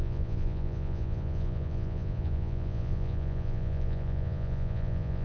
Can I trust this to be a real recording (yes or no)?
no